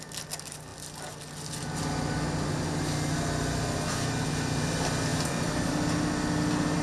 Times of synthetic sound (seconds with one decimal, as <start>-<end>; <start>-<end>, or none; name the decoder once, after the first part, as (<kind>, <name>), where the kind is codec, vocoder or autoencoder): 5.1-5.7 (vocoder, BigVGAN v2)